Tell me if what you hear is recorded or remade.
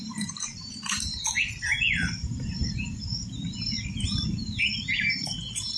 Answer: remade